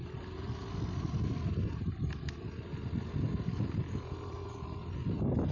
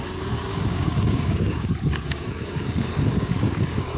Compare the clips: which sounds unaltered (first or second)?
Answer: first